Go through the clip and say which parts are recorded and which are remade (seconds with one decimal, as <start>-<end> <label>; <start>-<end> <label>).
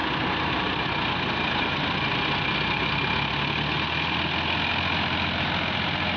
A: 0.0-6.2 recorded